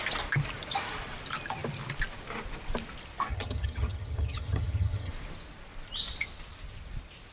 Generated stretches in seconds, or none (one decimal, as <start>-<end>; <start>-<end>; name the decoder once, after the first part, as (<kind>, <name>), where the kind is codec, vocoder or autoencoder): 3.3-5.1 (vocoder, HiFi-GAN)